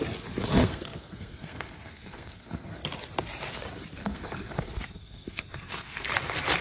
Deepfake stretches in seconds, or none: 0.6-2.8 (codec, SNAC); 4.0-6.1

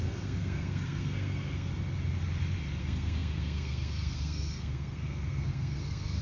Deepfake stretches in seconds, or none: 0.0-1.7 (codec, SNAC); 2.8-6.2

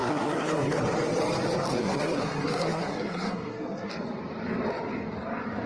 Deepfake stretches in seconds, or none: 0.0-0.8 (codec, SNAC); 1.7-3.9

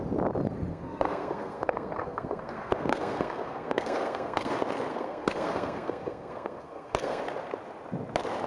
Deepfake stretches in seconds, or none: 0.7-4.5 (codec, SNAC); 4.9-7.2

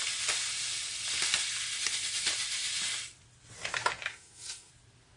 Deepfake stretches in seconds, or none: 4.1-4.7 (codec, SNAC)